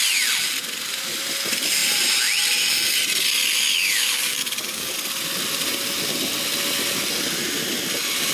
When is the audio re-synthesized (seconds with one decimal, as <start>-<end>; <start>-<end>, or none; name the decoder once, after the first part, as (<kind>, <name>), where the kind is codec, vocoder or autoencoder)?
3.7-4.9 (codec, DAC)